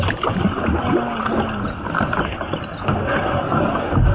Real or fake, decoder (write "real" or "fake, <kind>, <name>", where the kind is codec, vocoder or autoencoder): real